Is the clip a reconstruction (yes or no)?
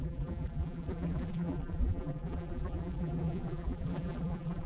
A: yes